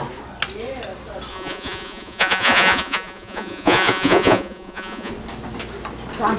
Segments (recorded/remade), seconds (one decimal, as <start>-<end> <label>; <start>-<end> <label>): 0.0-1.3 recorded; 1.3-5.1 remade; 5.1-6.4 recorded

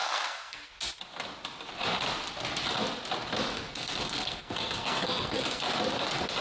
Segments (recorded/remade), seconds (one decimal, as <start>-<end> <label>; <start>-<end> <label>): 0.0-0.7 remade; 0.7-3.5 recorded; 3.5-5.6 remade; 5.6-6.4 recorded

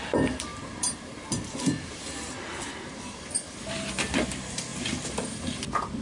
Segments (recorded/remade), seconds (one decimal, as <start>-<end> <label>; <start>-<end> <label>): 0.0-4.7 remade; 4.7-6.0 recorded

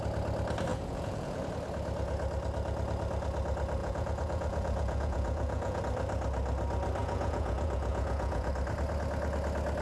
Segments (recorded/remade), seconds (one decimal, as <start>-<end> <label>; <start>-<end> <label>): 0.0-0.7 recorded; 0.7-1.4 remade; 1.4-3.8 recorded; 3.8-5.8 remade; 5.8-7.0 recorded; 7.0-8.5 remade; 8.5-9.8 recorded